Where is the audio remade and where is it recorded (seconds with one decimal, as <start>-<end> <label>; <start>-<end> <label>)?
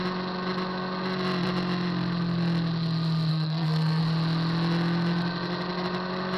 0.0-3.3 recorded; 3.3-4.0 remade; 4.0-6.4 recorded